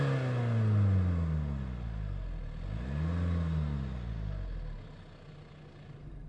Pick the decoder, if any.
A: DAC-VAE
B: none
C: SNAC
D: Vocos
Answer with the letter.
B